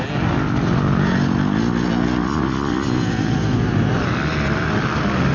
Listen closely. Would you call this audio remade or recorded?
recorded